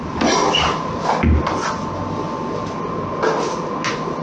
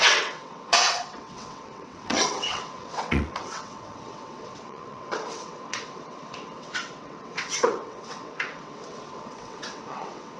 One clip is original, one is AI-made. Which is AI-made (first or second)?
second